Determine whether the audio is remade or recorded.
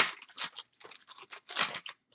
recorded